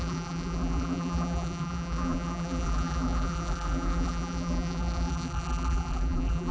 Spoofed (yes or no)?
yes